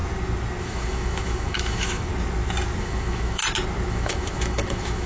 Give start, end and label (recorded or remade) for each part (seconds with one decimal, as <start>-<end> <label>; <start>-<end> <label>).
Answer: 0.0-0.6 recorded; 0.6-2.1 remade; 2.1-2.8 recorded; 2.8-3.4 remade; 3.4-3.9 recorded; 3.9-5.1 remade